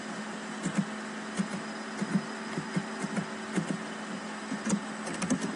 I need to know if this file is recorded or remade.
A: recorded